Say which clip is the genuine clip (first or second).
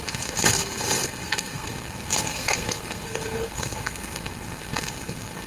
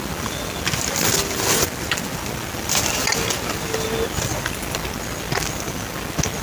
second